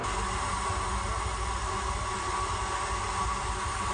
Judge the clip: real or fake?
real